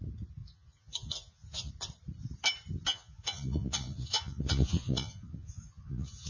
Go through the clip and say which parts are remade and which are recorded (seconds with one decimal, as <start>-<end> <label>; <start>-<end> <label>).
0.0-0.4 recorded; 0.4-1.7 remade; 1.7-2.9 recorded; 2.9-6.3 remade